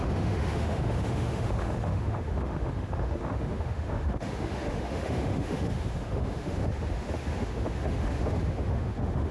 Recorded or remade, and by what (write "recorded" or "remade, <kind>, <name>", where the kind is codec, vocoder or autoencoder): remade, autoencoder, DAC-VAE